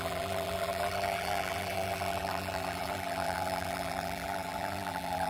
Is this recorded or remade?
remade